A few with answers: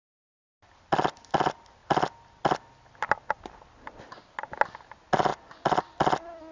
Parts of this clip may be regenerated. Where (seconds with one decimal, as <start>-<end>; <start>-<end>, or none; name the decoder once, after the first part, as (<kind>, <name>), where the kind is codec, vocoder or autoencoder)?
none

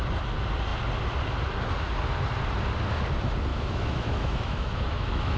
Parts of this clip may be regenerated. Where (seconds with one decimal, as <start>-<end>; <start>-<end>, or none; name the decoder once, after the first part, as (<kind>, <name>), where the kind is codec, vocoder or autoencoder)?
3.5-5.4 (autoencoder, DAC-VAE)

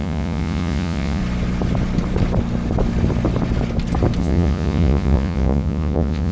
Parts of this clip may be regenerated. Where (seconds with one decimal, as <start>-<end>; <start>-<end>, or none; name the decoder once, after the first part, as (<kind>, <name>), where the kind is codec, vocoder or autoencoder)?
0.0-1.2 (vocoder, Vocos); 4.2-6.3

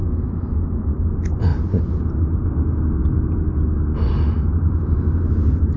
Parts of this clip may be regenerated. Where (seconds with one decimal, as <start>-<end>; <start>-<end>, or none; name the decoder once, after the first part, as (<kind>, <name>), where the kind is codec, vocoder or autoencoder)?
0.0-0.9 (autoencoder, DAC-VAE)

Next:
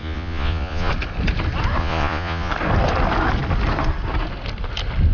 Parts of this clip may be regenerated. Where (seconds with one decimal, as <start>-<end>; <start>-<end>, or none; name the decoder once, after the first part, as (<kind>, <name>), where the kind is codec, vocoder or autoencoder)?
0.0-0.9 (vocoder, Vocos); 1.8-2.5

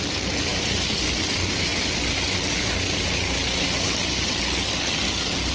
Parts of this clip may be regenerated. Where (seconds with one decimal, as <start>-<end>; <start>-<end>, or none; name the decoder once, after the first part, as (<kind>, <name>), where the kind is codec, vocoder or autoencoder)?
none

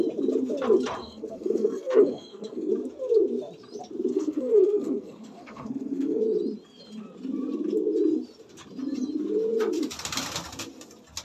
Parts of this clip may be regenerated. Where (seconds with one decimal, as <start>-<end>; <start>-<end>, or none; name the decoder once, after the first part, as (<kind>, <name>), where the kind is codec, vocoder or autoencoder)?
1.0-2.7 (codec, SNAC); 4.1-6.2

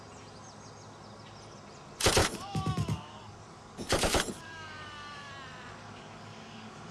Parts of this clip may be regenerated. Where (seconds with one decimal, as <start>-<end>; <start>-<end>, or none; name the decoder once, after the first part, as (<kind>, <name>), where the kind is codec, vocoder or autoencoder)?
2.2-5.3 (codec, DAC); 5.8-6.9